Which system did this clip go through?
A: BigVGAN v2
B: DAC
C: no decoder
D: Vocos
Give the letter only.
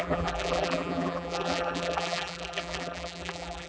A